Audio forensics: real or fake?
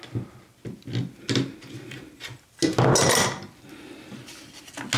real